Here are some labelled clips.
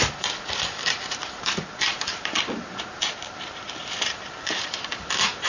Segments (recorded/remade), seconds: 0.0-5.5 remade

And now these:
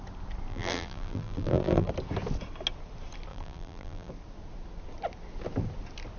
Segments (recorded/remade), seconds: 0.0-0.5 recorded; 0.5-1.9 remade; 1.9-3.3 recorded; 3.3-4.1 remade; 4.1-6.2 recorded

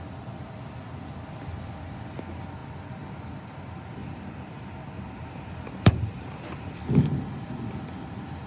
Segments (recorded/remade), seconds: 0.0-4.0 recorded; 4.0-6.8 remade; 6.8-8.5 recorded